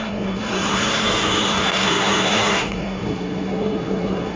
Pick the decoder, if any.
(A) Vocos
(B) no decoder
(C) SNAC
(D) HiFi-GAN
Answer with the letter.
C